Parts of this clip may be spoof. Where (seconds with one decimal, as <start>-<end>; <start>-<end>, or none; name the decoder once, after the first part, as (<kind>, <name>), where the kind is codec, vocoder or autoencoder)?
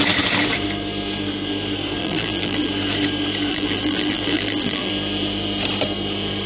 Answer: 2.0-2.7 (vocoder, BigVGAN v2); 3.5-4.9